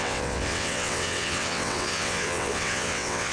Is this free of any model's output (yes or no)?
no